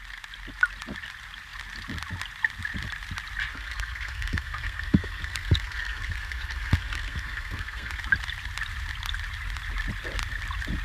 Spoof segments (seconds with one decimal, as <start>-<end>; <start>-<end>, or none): 3.5-8.0